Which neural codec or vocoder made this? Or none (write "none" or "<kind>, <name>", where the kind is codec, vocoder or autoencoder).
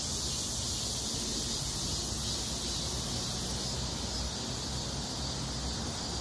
none